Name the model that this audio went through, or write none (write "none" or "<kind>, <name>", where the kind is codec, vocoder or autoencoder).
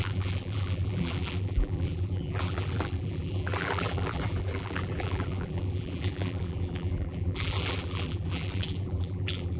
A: vocoder, BigVGAN v2